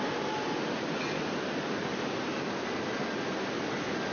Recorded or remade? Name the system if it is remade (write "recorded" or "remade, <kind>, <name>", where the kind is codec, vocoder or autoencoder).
recorded